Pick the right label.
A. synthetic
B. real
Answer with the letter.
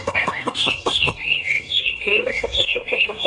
A